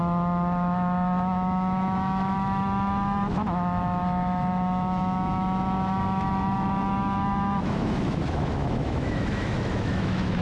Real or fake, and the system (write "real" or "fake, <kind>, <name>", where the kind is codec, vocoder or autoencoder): fake, autoencoder, DAC-VAE